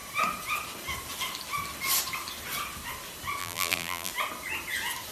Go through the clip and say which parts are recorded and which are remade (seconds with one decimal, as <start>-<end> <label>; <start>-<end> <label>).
0.0-3.4 recorded; 3.4-4.1 remade; 4.1-5.1 recorded

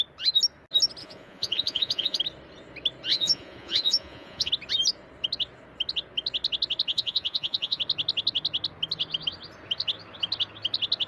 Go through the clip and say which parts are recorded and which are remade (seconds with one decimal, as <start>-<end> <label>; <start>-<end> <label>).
0.0-1.0 recorded; 1.0-2.2 remade; 2.2-3.1 recorded; 3.1-4.5 remade; 4.5-6.9 recorded; 6.9-7.8 remade; 7.8-11.1 recorded

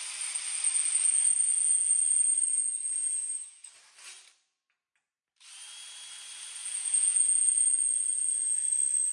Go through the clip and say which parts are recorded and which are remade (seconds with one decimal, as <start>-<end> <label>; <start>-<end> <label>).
0.0-2.5 recorded; 2.5-3.6 remade; 3.6-6.6 recorded; 6.6-7.5 remade; 7.5-9.1 recorded

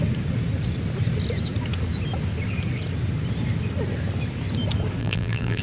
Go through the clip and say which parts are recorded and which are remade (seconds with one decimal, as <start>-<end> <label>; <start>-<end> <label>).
0.0-5.0 recorded; 5.0-5.6 remade

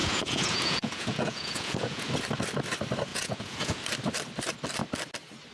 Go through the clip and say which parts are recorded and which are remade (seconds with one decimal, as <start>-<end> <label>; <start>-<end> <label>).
0.0-2.1 remade; 2.1-3.1 recorded; 3.1-3.8 remade; 3.8-5.5 recorded

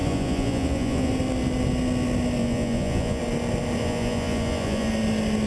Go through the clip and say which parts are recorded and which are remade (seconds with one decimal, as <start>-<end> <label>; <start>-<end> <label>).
0.0-1.1 remade; 1.1-2.4 recorded; 2.4-3.2 remade; 3.2-3.8 recorded; 3.8-4.9 remade; 4.9-5.5 recorded

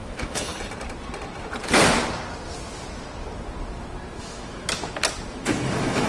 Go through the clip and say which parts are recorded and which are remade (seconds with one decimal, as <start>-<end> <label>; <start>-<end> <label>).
0.0-0.5 remade; 0.5-4.2 recorded; 4.2-4.8 remade; 4.8-5.3 recorded; 5.3-6.1 remade